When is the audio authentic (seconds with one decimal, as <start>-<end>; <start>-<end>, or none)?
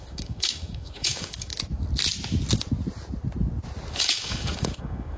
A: 1.5-3.9